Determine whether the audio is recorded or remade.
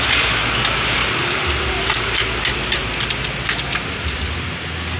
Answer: recorded